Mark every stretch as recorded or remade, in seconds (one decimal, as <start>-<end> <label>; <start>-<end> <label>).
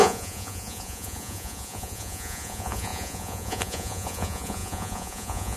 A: 0.0-5.6 remade